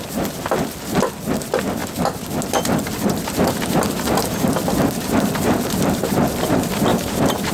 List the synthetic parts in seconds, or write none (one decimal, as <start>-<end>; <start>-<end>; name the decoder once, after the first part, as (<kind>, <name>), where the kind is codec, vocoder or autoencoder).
6.9-7.5 (vocoder, BigVGAN v2)